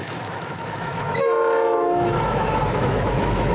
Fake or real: fake